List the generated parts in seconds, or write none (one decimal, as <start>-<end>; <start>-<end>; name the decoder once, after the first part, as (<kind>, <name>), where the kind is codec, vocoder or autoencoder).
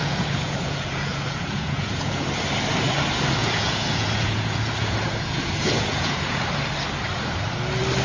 0.0-2.2 (vocoder, Vocos); 3.4-6.4